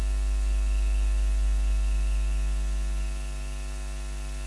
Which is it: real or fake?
real